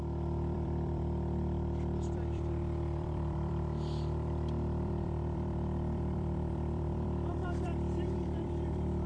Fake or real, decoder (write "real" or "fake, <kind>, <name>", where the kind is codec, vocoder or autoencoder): fake, vocoder, BigVGAN v2